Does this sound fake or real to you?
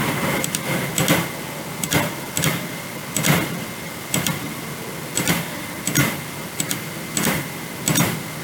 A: real